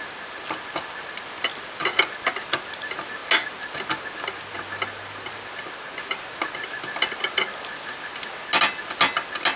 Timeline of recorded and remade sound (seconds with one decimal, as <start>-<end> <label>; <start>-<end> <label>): 0.0-9.6 recorded